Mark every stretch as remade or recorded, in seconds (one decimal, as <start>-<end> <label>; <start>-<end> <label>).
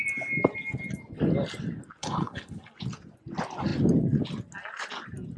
0.0-2.0 recorded; 2.0-2.7 remade; 2.7-5.4 recorded